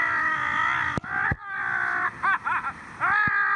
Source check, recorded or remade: recorded